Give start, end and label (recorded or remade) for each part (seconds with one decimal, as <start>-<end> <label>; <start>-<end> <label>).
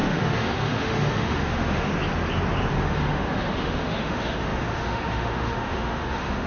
0.0-1.9 remade; 1.9-2.7 recorded; 2.7-6.5 remade